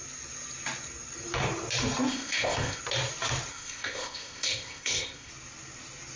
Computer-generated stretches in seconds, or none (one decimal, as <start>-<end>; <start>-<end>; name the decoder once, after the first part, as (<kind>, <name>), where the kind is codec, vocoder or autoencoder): 2.1-2.8 (codec, ZipCodec); 3.5-5.3